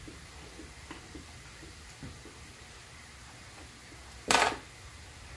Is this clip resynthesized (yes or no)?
no